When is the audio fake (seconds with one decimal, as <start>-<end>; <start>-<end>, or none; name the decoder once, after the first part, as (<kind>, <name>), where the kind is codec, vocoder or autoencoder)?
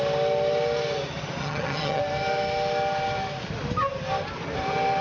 1.4-2.0 (vocoder, HiFi-GAN)